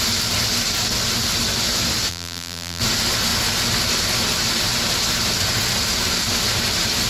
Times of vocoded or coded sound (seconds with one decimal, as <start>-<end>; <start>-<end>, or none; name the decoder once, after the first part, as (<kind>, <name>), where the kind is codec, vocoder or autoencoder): 2.1-2.8 (vocoder, BigVGAN v2)